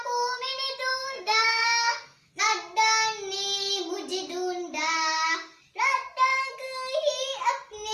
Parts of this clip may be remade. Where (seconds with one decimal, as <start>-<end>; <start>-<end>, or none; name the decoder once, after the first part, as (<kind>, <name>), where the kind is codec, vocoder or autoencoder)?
0.9-2.4 (codec, SNAC)